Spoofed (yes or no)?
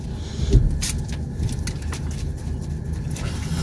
no